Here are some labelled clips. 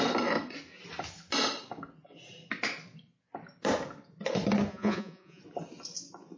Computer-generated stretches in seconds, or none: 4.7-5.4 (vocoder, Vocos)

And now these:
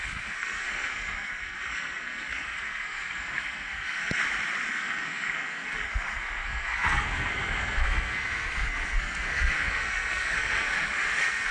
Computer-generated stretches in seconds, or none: 0.0-4.2 (codec, SNAC); 4.7-11.5

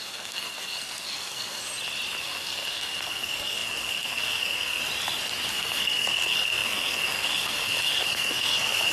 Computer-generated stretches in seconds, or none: 0.0-1.7 (codec, SNAC); 2.2-4.8; 5.5-8.9

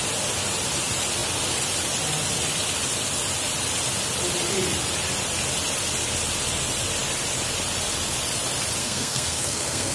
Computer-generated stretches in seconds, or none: 8.8-9.9 (codec, SNAC)

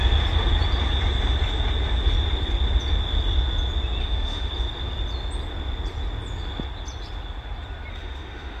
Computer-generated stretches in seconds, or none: 4.0-4.5 (autoencoder, DAC-VAE); 7.9-8.6

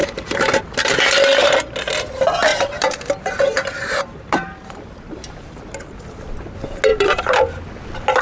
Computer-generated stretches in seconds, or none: 0.0-0.6 (vocoder, BigVGAN v2); 2.5-5.6; 6.9-7.4